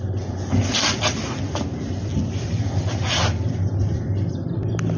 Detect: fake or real real